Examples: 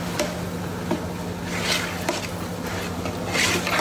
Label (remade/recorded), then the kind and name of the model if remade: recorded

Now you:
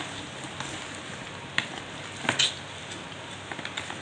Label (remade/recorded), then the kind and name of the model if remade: recorded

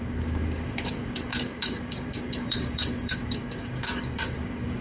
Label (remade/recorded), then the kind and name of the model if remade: remade, codec, DAC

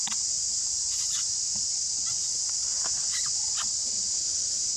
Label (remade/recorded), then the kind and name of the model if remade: recorded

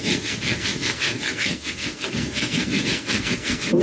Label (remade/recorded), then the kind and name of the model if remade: remade, codec, SNAC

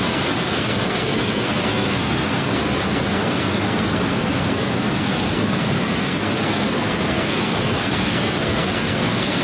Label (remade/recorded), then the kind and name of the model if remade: remade, codec, SNAC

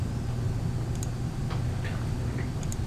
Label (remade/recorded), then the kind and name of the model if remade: recorded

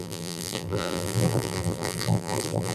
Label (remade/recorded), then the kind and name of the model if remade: remade, vocoder, BigVGAN v2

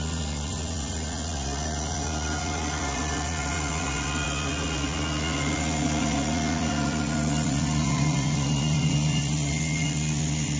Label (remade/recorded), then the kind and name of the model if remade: remade, vocoder, Vocos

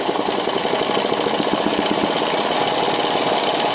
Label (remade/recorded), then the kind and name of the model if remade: recorded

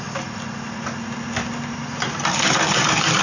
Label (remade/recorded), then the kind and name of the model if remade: recorded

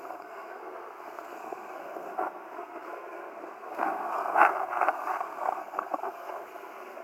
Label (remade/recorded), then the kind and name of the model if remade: remade, codec, SNAC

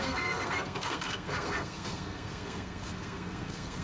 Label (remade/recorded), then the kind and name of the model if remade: remade, codec, SNAC